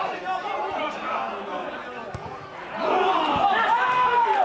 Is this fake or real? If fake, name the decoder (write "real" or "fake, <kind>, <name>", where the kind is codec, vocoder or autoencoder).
real